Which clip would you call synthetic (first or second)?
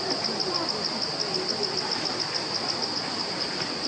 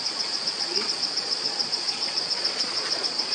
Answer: second